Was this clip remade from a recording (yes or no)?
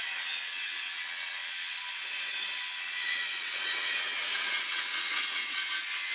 yes